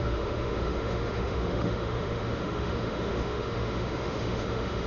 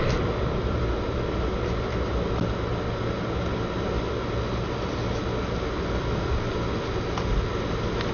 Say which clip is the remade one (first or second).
first